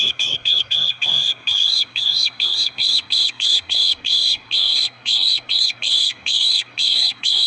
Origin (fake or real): fake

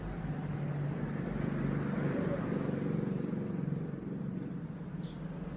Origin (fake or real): real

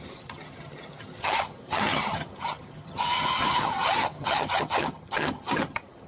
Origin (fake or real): fake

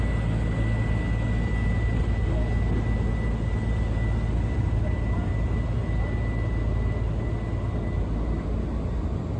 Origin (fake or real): real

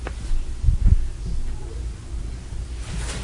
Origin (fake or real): real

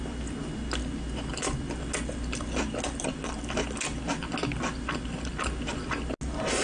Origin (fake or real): real